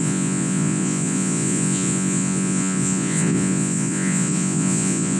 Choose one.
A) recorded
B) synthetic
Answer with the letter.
B